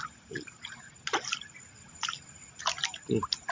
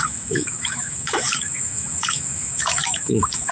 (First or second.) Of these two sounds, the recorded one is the first